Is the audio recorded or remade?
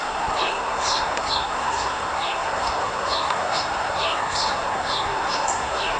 remade